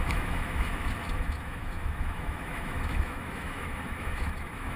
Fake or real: fake